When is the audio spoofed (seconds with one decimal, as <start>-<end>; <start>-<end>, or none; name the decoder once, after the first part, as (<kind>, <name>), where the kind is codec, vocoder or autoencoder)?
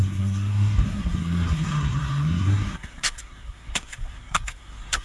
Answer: 0.0-5.0 (codec, SNAC)